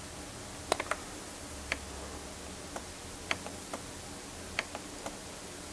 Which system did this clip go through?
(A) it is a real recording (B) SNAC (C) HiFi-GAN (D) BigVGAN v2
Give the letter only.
A